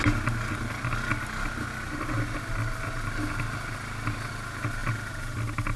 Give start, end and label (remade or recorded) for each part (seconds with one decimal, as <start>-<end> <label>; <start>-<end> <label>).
0.0-5.8 recorded